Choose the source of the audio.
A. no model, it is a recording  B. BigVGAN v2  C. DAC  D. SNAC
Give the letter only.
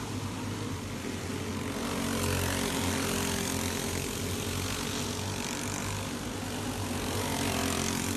A